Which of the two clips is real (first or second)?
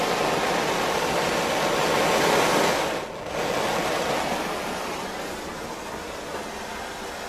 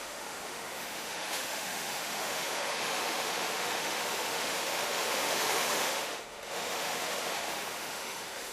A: first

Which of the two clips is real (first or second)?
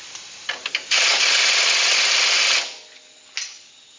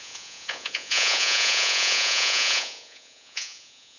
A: first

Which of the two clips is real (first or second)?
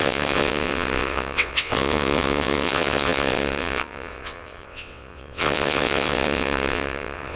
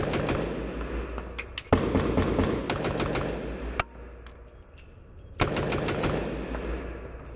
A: second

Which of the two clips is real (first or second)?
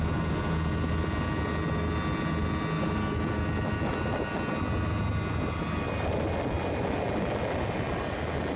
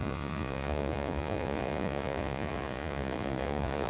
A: first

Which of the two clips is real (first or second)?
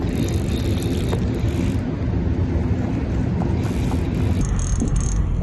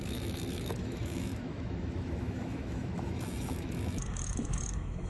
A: first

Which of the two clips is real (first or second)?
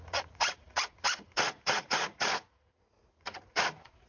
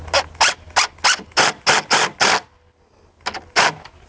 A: second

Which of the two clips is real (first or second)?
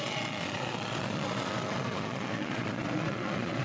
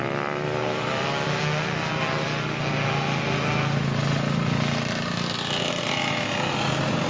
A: second